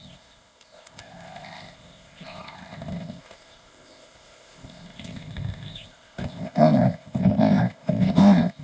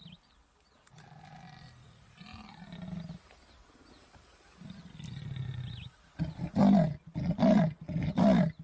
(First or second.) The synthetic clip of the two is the first